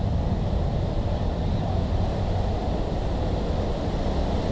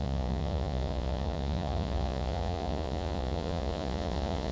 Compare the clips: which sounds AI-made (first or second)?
second